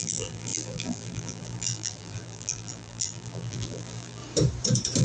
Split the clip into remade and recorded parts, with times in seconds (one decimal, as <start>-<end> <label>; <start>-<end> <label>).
0.0-4.2 remade; 4.2-5.0 recorded